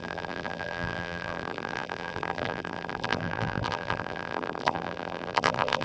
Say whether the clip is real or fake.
fake